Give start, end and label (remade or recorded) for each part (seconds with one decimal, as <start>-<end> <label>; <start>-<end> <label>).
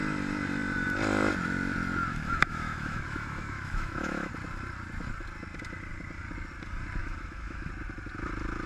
0.0-2.1 recorded; 2.1-4.3 remade; 4.3-7.0 recorded; 7.0-7.7 remade; 7.7-8.7 recorded